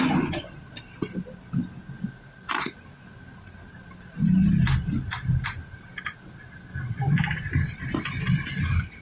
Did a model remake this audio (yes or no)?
no